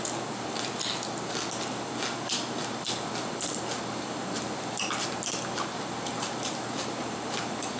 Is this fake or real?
real